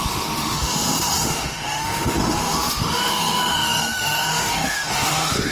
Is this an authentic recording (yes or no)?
no